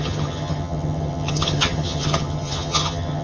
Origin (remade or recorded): remade